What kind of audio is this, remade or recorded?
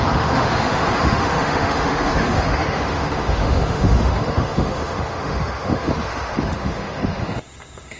remade